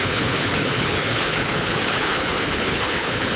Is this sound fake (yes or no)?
yes